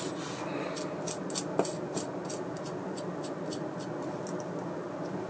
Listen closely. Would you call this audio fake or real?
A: real